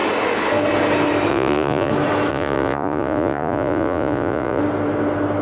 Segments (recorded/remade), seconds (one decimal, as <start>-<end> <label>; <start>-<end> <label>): 0.0-1.3 recorded; 1.3-1.9 remade; 1.9-2.3 recorded; 2.3-4.6 remade; 4.6-5.4 recorded